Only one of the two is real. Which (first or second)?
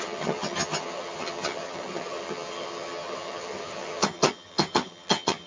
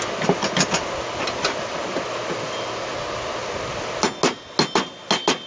second